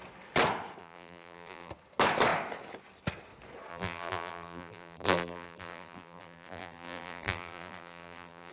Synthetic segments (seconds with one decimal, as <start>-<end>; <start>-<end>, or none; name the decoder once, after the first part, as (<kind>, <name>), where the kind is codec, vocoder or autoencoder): 0.8-1.7 (vocoder, BigVGAN v2); 3.7-8.5